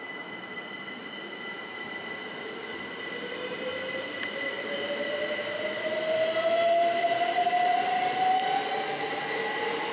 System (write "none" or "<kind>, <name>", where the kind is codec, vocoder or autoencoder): none